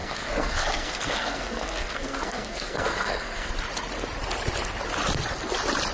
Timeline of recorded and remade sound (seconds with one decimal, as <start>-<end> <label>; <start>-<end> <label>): 0.0-3.5 remade; 3.5-5.9 recorded